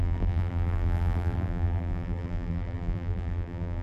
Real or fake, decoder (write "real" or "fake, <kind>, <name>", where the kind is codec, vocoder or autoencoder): fake, vocoder, BigVGAN v2